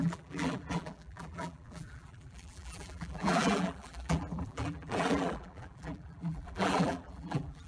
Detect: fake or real fake